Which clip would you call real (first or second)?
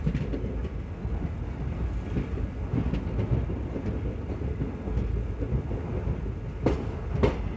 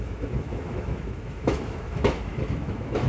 first